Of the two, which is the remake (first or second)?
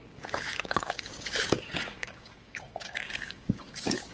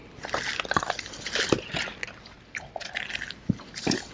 first